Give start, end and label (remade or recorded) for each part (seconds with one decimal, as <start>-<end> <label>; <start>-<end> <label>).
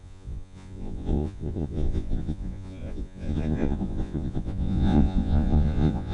0.0-6.1 remade